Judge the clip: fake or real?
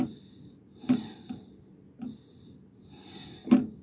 real